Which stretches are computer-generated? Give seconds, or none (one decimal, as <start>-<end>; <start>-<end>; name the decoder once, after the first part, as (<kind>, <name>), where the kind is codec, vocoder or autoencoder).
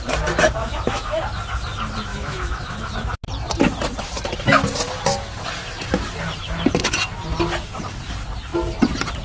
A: 0.6-1.2 (autoencoder, DAC-VAE); 2.1-2.9